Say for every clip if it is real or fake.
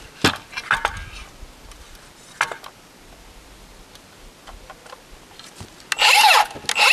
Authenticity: real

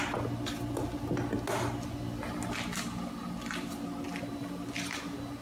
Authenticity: real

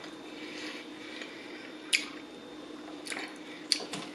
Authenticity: real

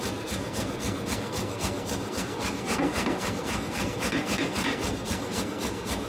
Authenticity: fake